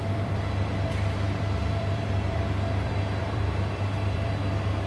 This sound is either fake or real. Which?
fake